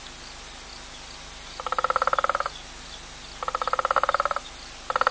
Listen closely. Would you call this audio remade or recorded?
recorded